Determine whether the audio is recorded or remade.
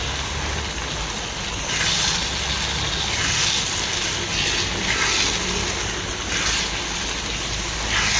recorded